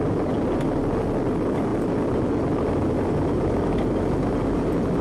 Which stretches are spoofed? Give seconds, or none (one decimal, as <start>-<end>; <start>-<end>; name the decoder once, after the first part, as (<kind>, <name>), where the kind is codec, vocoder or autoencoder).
none